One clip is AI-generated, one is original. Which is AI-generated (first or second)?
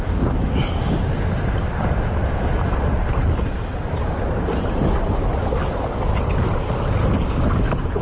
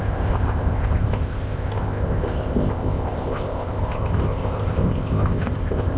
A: second